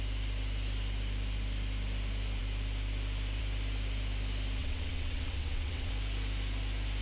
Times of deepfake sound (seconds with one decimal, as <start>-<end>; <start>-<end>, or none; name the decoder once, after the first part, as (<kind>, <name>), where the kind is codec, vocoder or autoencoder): 4.6-5.9 (vocoder, WaveNeXt)